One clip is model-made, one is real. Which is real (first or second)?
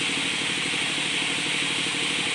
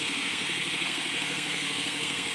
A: first